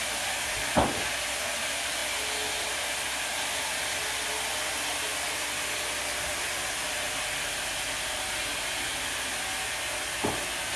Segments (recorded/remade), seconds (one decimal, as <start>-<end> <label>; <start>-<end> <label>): 0.0-10.8 recorded